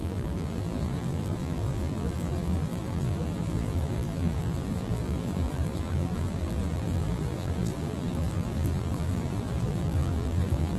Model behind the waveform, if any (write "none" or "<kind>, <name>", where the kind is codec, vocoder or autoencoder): vocoder, BigVGAN v2